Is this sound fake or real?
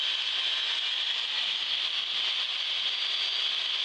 real